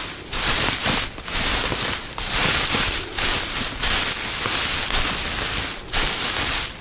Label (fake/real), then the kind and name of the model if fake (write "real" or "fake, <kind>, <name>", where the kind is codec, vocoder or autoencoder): real